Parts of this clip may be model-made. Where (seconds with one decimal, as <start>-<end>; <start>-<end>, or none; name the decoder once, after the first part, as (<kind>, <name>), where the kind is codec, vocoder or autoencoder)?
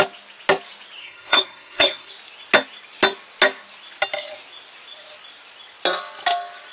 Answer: 1.0-2.1 (codec, SNAC)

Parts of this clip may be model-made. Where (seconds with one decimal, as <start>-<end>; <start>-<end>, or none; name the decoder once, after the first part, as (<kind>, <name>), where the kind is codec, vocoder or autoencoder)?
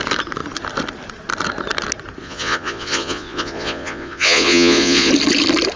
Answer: 2.2-5.1 (vocoder, Vocos)